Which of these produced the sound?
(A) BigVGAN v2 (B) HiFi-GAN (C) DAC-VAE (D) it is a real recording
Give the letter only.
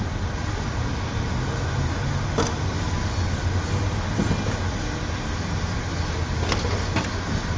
D